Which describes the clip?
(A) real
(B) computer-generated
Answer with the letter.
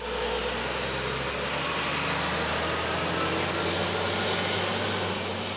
A